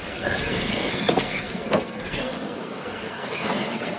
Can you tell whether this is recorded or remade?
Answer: remade